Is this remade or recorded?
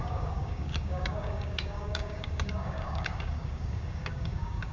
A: remade